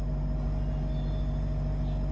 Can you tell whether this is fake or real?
real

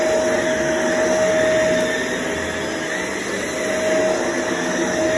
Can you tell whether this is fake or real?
real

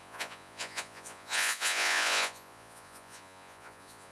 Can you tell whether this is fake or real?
fake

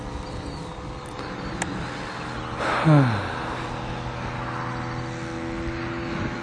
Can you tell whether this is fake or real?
real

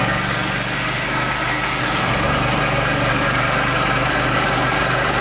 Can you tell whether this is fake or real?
real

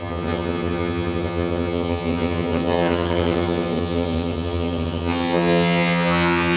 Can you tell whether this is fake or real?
fake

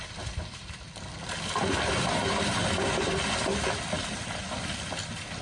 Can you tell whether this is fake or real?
real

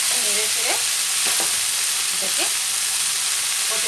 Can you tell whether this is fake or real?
real